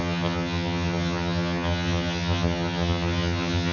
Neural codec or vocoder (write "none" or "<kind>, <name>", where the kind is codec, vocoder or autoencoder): vocoder, HiFi-GAN